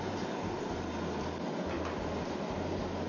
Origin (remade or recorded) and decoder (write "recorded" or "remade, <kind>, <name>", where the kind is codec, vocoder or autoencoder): recorded